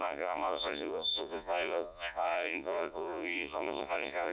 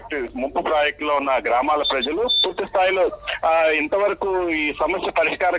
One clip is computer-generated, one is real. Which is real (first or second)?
second